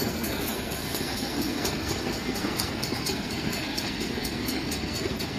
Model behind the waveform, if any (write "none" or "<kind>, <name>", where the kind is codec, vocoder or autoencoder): codec, SNAC